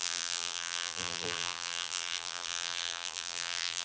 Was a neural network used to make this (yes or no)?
yes